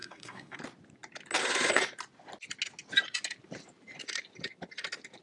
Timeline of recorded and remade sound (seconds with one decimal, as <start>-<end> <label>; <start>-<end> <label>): 0.0-0.6 remade; 0.6-5.2 recorded